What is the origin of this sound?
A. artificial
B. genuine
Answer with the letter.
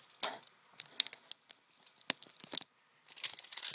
B